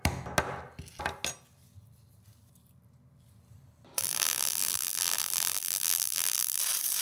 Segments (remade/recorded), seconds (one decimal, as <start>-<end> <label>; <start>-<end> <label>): 0.0-4.0 recorded; 4.0-6.6 remade; 6.6-7.0 recorded